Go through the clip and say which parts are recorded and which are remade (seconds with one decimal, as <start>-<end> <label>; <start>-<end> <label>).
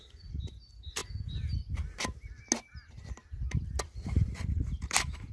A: 0.0-1.0 remade; 1.0-4.2 recorded; 4.2-5.3 remade